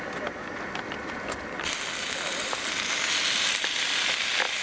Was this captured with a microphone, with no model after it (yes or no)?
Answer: yes